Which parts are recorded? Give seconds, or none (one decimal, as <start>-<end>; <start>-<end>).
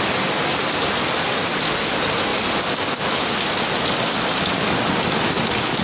0.0-5.8